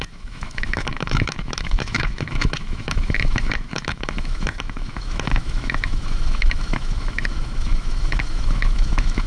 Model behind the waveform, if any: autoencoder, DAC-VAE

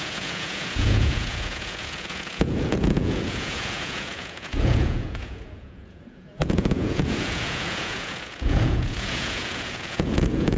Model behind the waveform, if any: vocoder, Vocos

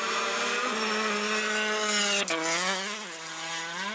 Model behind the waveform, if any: none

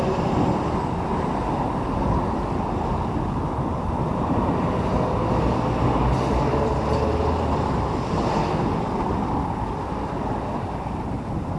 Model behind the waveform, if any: none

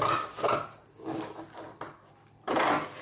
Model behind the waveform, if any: none